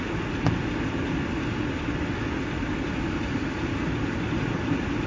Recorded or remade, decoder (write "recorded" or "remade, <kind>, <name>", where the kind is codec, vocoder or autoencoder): recorded